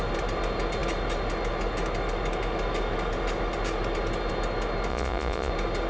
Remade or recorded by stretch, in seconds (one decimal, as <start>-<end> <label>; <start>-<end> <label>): 0.0-4.9 recorded; 4.9-5.5 remade; 5.5-5.9 recorded